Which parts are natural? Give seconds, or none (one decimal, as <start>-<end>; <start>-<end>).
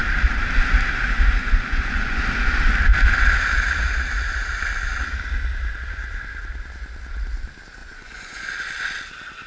0.0-1.4; 2.2-7.8; 8.5-9.5